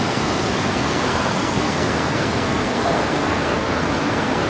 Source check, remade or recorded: remade